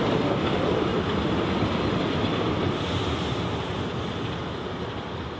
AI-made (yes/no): no